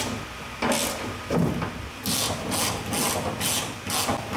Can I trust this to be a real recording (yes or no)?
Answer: yes